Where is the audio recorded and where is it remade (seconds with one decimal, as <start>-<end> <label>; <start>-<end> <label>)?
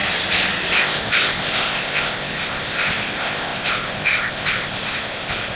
0.0-0.8 recorded; 0.8-5.6 remade